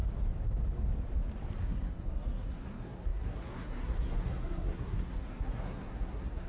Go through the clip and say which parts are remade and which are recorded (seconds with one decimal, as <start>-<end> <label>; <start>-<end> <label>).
0.0-1.6 recorded; 1.6-6.5 remade